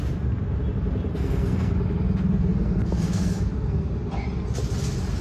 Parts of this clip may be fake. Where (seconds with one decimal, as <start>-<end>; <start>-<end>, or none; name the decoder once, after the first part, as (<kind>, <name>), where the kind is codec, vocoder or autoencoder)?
1.1-1.7 (codec, SNAC); 2.5-3.9